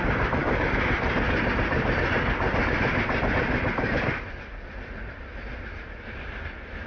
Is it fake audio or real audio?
fake